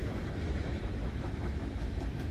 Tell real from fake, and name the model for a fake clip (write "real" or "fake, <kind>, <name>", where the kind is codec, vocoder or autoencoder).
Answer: fake, autoencoder, DAC-VAE